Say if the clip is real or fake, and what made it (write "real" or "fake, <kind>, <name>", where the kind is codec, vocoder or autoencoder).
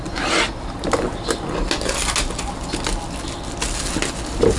real